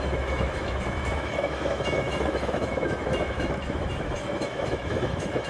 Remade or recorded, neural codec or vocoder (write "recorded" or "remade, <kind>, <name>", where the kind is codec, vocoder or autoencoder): remade, autoencoder, DAC-VAE